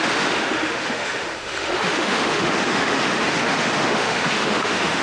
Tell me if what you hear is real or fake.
fake